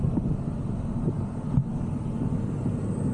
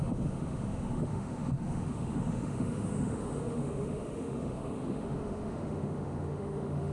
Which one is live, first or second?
first